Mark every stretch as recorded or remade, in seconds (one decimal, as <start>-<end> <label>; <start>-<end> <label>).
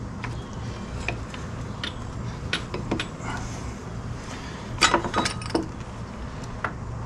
0.0-3.8 recorded; 3.8-5.4 remade; 5.4-7.1 recorded